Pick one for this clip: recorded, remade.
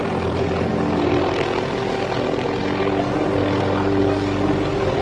recorded